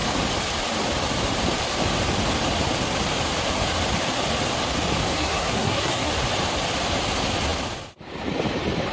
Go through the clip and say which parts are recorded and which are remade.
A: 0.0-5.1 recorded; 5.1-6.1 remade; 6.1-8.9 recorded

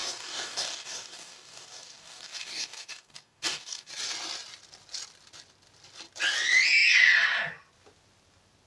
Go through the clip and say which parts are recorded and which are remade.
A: 0.0-3.9 remade; 3.9-8.7 recorded